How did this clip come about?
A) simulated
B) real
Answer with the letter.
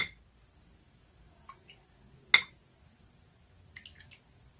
B